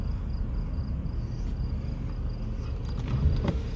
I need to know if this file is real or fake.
real